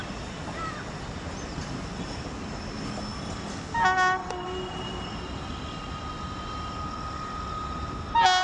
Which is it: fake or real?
real